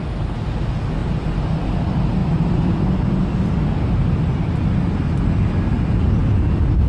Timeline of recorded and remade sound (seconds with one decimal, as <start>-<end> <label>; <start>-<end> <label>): 0.0-6.9 recorded